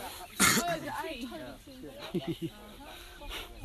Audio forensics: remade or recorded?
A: recorded